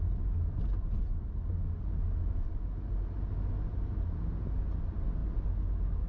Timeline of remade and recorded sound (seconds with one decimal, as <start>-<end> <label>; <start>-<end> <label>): 0.0-6.1 recorded